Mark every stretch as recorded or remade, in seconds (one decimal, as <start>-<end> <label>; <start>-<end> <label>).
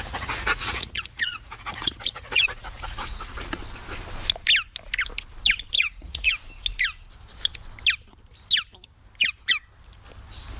0.0-3.6 remade; 3.6-5.8 recorded; 5.8-6.3 remade; 6.3-10.6 recorded